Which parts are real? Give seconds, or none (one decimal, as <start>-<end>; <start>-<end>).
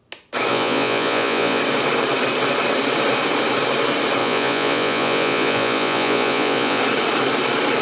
0.0-0.5; 1.6-4.2; 6.8-7.8